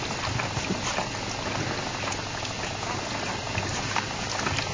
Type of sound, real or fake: real